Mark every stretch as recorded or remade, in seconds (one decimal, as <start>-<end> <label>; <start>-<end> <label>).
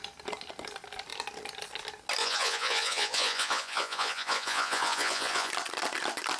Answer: 0.0-2.2 recorded; 2.2-5.5 remade; 5.5-6.4 recorded